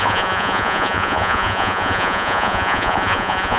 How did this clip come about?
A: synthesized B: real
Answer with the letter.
A